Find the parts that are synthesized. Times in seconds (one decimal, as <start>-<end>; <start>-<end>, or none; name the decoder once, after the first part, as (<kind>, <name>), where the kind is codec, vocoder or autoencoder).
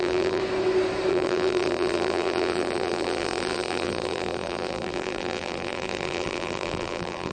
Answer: 0.0-0.4 (vocoder, BigVGAN v2); 1.1-7.3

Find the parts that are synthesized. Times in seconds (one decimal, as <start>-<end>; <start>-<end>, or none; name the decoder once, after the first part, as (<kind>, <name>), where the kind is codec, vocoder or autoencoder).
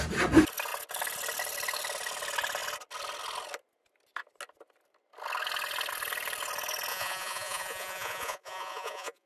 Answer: 6.9-9.3 (vocoder, Vocos)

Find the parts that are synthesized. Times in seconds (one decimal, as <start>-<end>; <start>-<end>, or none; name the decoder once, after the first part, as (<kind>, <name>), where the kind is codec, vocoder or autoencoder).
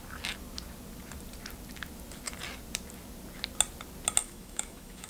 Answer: 4.2-5.1 (autoencoder, DAC-VAE)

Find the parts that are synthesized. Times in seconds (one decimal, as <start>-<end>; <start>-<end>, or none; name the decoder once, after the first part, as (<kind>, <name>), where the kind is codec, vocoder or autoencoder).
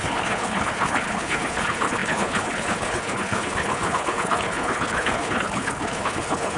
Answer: 0.0-6.6 (codec, HILCodec)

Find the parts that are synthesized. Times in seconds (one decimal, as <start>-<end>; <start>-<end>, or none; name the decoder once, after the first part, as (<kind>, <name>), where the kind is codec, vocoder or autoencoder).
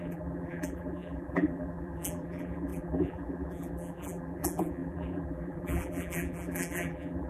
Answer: 0.0-7.3 (vocoder, BigVGAN v2)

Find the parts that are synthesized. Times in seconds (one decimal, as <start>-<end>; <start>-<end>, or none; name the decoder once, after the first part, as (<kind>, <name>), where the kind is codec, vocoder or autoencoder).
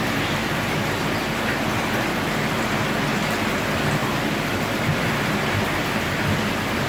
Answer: none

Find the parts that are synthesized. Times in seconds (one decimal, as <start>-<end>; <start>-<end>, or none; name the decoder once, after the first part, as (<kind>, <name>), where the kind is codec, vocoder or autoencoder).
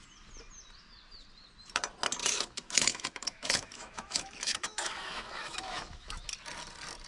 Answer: 2.2-6.3 (autoencoder, DAC-VAE)